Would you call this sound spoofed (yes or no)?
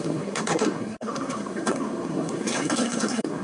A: yes